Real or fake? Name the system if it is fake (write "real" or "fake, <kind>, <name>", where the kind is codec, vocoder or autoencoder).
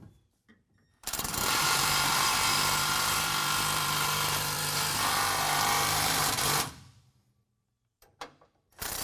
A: fake, vocoder, BigVGAN v2